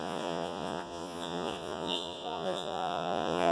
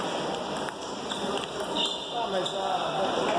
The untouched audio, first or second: second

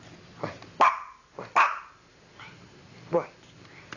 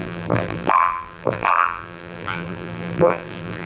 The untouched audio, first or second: first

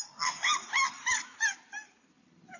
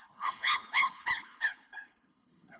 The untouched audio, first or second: first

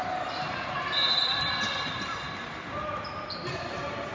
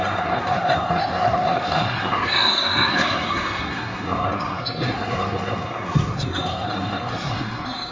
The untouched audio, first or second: first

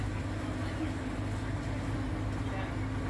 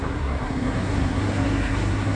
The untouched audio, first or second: first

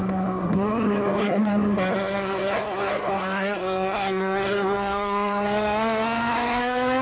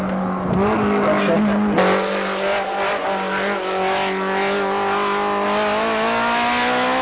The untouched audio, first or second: second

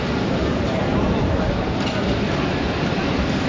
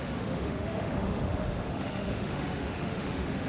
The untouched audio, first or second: first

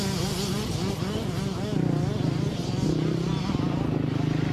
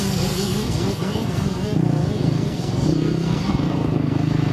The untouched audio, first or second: first